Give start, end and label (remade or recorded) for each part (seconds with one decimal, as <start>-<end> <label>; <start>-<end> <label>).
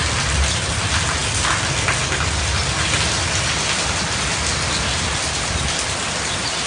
0.0-6.7 recorded